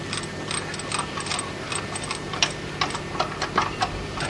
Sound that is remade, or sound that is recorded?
recorded